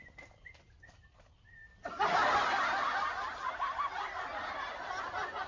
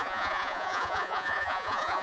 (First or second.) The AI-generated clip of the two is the second